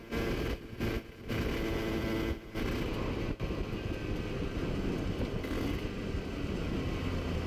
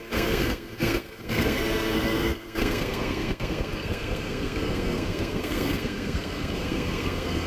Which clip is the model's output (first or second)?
second